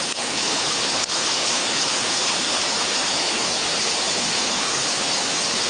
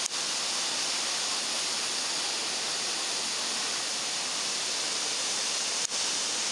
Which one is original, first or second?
second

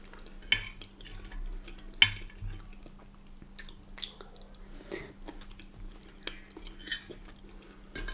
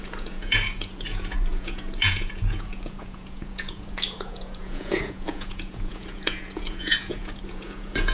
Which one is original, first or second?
first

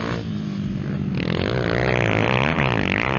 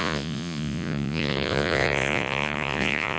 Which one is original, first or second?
first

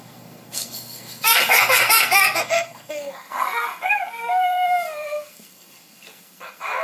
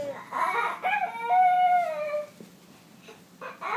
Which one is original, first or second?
second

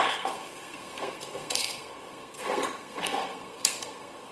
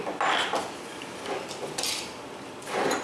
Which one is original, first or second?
second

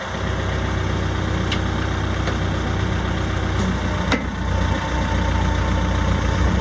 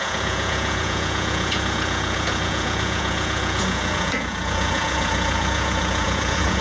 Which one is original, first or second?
first